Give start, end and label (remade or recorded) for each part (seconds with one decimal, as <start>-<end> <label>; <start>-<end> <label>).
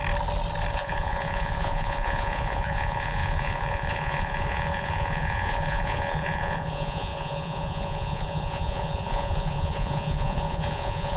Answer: 0.0-0.7 recorded; 0.7-11.2 remade